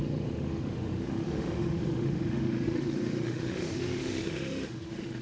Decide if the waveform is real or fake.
fake